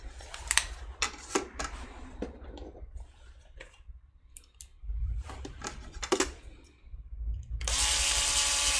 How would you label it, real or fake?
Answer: fake